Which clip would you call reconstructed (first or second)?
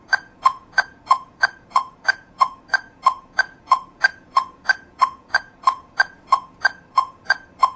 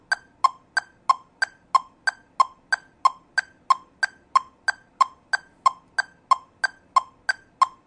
first